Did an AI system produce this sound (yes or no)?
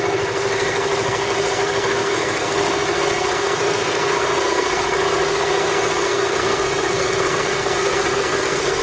yes